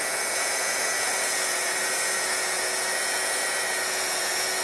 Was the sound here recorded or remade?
remade